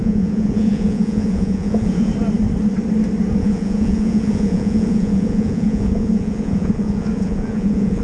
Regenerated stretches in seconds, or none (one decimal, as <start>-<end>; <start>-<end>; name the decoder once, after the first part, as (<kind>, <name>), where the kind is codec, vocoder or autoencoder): 0.0-2.1 (vocoder, Vocos); 3.4-8.0